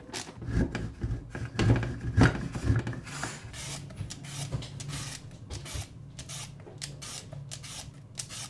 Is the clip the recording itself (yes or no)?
yes